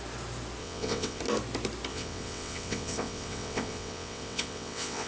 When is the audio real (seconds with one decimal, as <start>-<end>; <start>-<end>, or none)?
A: 0.0-0.6; 1.2-1.9